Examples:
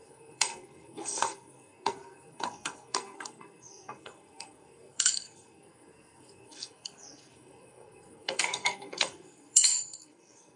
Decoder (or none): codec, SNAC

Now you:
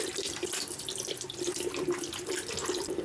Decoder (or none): vocoder, BigVGAN v2